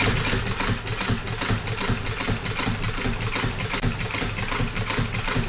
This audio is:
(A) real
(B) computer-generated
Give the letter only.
A